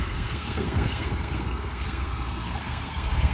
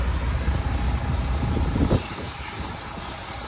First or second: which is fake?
first